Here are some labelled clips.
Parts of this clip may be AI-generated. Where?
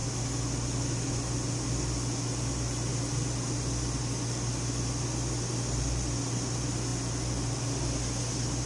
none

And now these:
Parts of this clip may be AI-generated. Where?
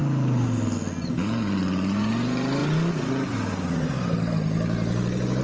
none